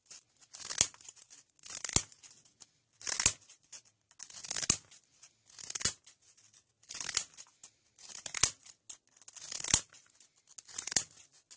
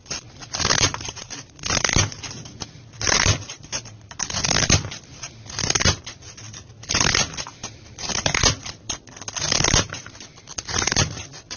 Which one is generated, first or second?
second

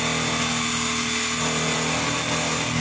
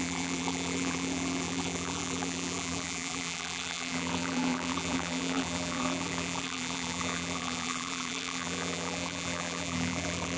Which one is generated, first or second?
second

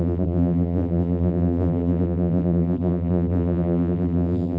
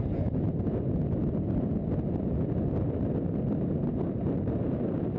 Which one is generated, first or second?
first